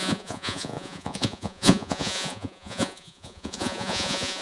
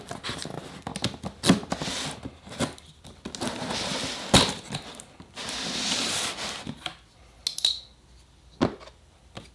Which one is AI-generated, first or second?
first